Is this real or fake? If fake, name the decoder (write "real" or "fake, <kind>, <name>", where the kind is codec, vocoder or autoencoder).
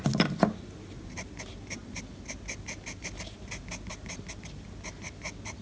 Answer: real